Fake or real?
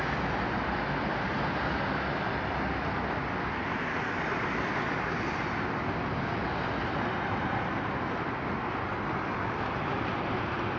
real